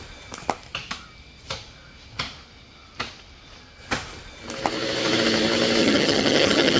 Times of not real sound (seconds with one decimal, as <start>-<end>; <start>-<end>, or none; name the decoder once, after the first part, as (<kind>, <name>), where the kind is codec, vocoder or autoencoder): 5.8-6.8 (vocoder, HiFi-GAN)